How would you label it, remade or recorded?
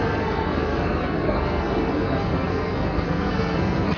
remade